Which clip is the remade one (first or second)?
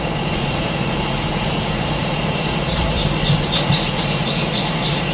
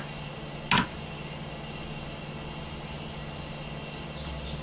first